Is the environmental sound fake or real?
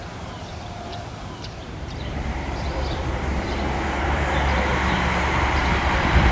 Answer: fake